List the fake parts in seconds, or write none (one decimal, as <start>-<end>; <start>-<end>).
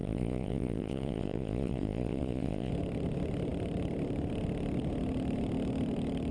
0.0-2.7